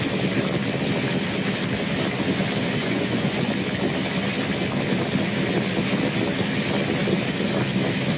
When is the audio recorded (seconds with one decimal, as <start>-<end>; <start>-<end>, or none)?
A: 0.0-2.8; 3.5-8.2